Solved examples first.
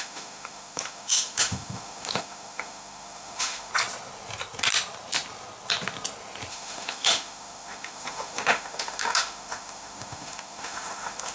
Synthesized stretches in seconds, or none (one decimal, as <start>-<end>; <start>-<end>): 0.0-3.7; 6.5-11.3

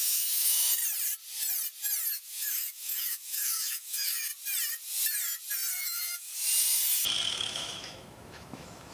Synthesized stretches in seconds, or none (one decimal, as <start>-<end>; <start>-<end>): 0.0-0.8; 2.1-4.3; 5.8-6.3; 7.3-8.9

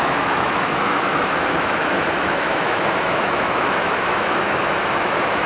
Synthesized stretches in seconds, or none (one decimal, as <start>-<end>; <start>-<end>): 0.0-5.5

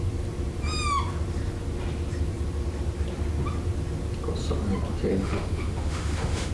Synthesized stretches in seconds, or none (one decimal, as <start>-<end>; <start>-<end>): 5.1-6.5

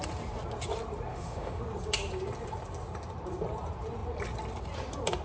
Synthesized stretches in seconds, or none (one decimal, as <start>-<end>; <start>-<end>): 1.1-1.6

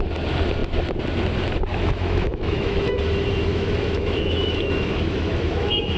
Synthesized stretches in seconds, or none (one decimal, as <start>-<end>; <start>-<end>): 1.7-3.0; 3.5-6.0

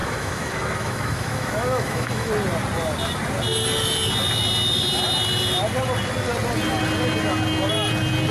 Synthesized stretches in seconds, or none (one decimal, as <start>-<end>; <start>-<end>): 0.0-2.3